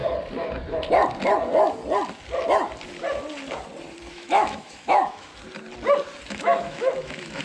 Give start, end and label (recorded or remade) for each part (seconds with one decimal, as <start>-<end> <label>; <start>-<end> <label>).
0.0-4.1 recorded; 4.1-5.3 remade; 5.3-6.3 recorded; 6.3-7.4 remade